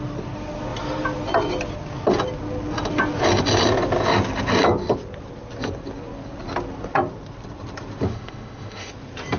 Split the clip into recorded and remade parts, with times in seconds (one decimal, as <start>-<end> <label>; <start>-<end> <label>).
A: 0.0-8.1 recorded; 8.1-8.9 remade; 8.9-9.4 recorded